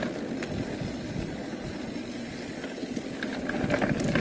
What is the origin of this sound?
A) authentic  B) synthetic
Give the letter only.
A